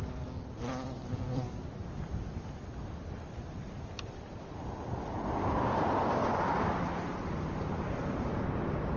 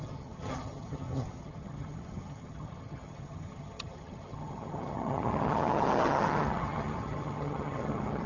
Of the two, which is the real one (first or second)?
first